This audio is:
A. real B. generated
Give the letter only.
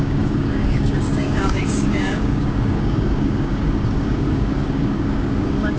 B